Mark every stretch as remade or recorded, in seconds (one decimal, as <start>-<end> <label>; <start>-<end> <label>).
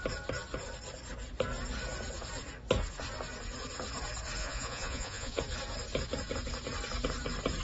0.0-4.4 recorded; 4.4-5.4 remade; 5.4-7.6 recorded